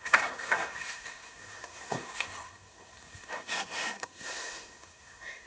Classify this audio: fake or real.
fake